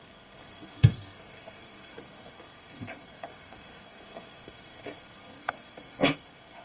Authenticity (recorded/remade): remade